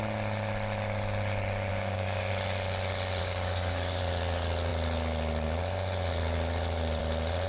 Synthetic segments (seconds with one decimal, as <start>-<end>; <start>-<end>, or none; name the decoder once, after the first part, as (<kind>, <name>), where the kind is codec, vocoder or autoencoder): 1.7-2.3 (codec, DAC); 3.2-4.0